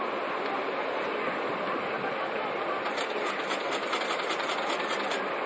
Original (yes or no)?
yes